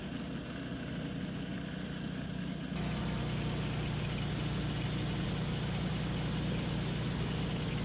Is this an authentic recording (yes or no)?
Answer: yes